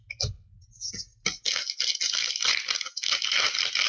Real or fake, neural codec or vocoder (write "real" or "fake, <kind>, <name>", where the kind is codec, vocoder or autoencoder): real